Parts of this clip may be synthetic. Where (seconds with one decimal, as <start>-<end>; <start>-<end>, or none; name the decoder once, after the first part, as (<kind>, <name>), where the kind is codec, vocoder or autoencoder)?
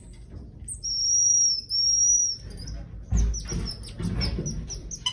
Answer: none